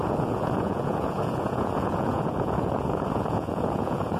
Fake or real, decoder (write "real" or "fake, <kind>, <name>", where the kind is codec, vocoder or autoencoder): fake, vocoder, Vocos